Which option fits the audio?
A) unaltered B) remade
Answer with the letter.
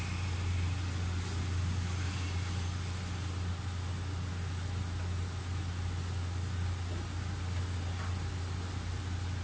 A